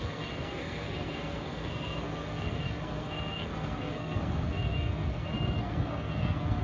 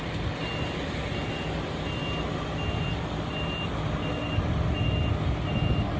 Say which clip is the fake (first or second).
first